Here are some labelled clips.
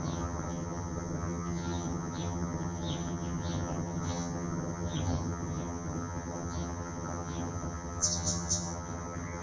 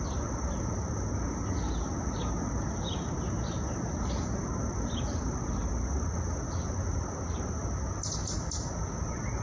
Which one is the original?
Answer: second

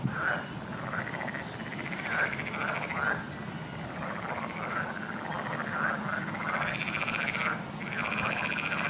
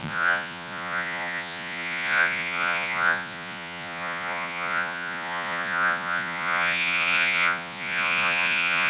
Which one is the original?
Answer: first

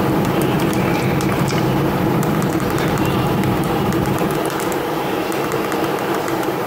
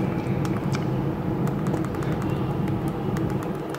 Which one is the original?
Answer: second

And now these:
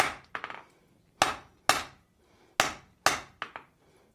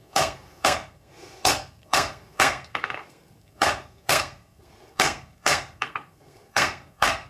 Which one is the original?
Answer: first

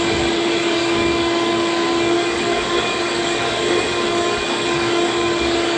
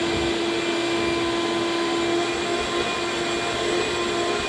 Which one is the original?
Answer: second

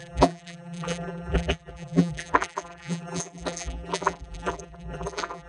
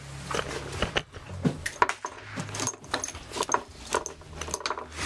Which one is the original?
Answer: second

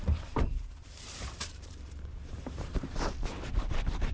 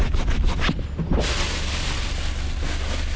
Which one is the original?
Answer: second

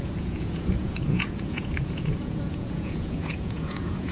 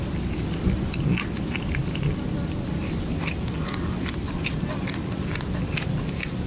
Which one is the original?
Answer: second